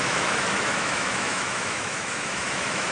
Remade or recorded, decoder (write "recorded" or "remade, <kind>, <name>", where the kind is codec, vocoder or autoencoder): remade, autoencoder, DAC-VAE